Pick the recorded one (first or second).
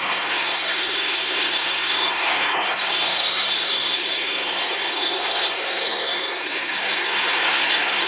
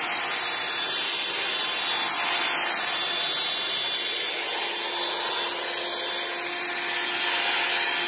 second